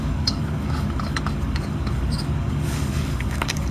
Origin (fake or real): fake